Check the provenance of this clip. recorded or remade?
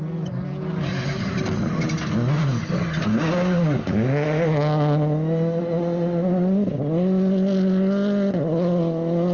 recorded